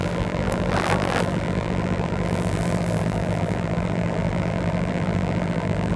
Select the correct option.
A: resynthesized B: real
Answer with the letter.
A